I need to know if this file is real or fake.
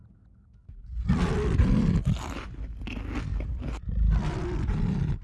real